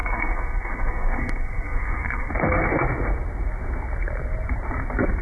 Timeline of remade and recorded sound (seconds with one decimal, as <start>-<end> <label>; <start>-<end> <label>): 0.0-2.3 remade; 2.3-5.2 recorded